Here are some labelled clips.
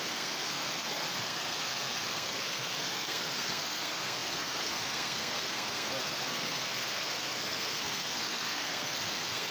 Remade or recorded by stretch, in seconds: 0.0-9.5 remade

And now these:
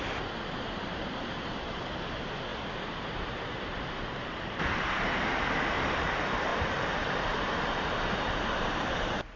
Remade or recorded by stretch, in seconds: 0.0-9.4 remade

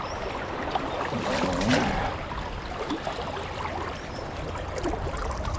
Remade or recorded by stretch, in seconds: 0.0-1.7 remade; 1.7-5.1 recorded; 5.1-5.6 remade

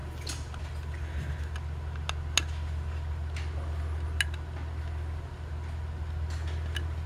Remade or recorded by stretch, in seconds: 0.0-7.1 recorded

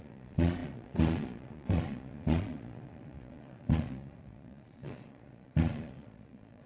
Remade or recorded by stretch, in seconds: 0.0-6.7 remade

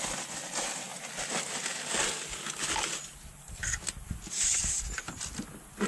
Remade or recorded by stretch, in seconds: 0.0-5.9 recorded